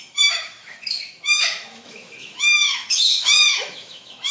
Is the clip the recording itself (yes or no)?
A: no